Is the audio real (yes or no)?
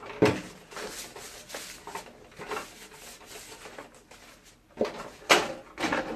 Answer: yes